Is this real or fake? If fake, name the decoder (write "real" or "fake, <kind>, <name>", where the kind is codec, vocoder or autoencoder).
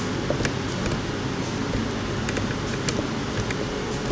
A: real